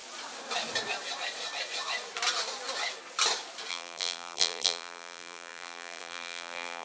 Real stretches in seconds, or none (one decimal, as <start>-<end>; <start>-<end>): 0.0-3.7